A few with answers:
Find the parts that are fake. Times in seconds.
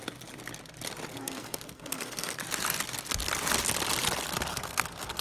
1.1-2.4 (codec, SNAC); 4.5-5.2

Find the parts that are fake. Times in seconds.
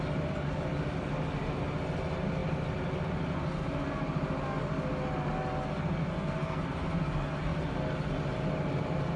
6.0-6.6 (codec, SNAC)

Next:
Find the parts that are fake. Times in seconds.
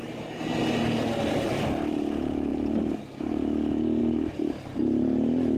0.0-0.6 (vocoder, BigVGAN v2); 4.0-4.6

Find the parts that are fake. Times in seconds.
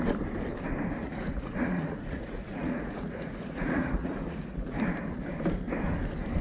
1.0-4.8 (vocoder, Vocos)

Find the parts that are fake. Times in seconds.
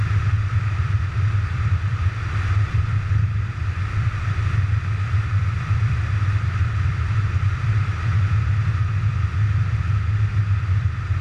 0.0-8.1 (vocoder, BigVGAN v2); 10.3-11.2